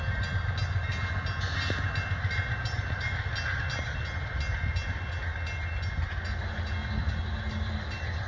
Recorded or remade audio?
recorded